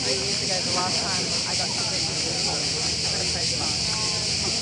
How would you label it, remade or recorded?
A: recorded